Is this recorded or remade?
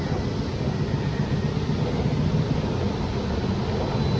recorded